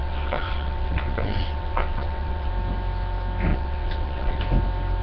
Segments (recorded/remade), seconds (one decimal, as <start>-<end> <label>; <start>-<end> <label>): 0.0-2.5 remade; 2.5-3.5 recorded; 3.5-4.4 remade; 4.4-5.0 recorded